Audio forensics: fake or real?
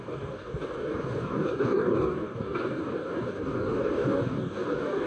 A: fake